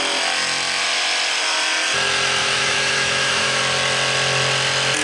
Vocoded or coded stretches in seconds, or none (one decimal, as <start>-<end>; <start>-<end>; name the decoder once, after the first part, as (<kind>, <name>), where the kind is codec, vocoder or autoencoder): 2.4-3.6 (autoencoder, DAC-VAE)